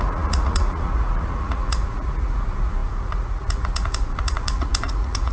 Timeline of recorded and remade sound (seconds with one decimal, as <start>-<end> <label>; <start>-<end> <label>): 0.0-5.3 remade